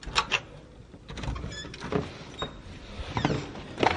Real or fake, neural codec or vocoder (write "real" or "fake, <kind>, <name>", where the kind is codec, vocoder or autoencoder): real